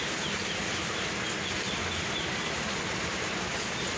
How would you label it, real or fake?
real